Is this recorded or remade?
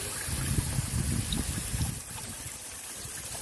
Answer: recorded